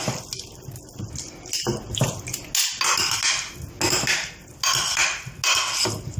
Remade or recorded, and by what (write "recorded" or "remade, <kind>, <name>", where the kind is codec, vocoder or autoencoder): recorded